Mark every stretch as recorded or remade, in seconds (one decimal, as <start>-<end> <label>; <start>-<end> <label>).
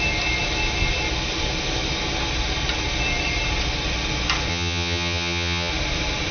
0.0-4.5 recorded; 4.5-5.7 remade; 5.7-6.3 recorded